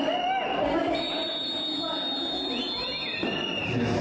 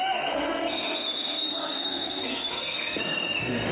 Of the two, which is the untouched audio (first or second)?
first